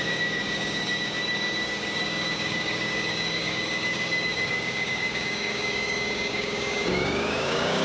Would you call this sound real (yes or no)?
no